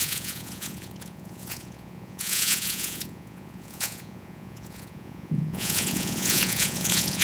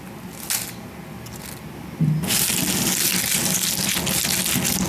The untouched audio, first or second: second